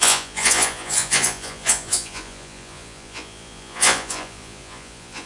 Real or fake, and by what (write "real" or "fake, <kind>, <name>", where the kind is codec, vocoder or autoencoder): fake, vocoder, Vocos